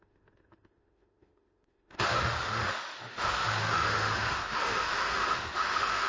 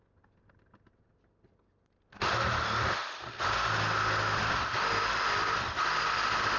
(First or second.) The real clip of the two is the second